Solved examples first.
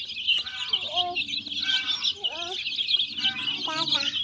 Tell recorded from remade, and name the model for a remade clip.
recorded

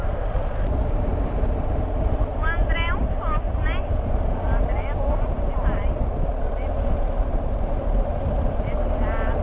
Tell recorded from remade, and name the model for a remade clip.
remade, vocoder, BigVGAN v2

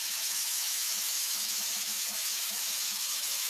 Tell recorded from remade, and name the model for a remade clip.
remade, autoencoder, DAC-VAE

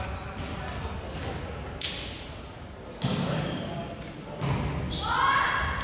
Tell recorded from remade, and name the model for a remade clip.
recorded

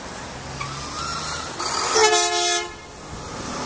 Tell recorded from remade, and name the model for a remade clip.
recorded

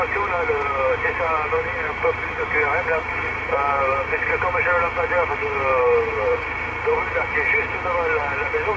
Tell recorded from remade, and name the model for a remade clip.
recorded